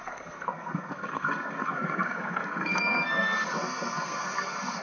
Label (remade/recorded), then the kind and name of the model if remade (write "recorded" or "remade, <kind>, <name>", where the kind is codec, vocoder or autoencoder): remade, codec, SNAC